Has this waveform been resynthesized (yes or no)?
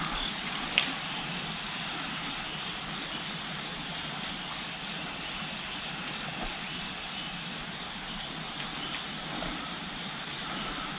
no